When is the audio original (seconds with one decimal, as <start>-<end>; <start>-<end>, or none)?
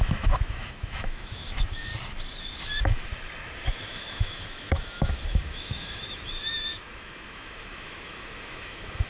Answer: 1.9-2.6; 3.1-3.9